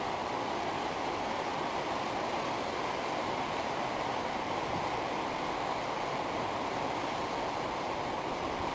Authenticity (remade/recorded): recorded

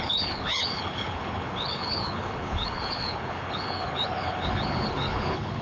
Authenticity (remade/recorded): remade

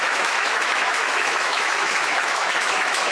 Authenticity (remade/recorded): remade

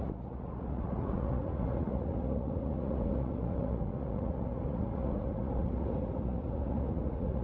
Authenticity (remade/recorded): remade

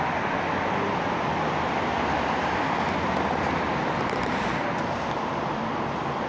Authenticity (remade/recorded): recorded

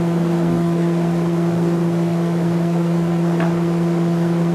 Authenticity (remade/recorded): remade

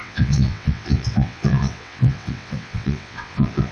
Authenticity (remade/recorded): remade